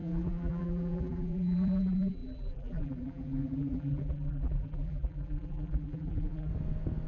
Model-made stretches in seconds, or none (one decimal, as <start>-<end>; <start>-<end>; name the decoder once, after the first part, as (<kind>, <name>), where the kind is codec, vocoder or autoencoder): 0.0-6.5 (vocoder, BigVGAN v2)